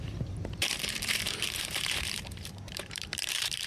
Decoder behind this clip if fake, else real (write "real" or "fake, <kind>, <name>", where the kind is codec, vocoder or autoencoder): fake, vocoder, BigVGAN v2